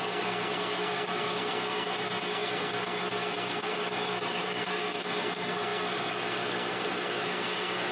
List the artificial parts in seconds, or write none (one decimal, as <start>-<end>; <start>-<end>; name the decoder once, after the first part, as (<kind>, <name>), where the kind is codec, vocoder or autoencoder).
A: 0.0-7.9 (codec, SNAC)